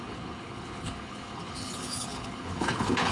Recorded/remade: remade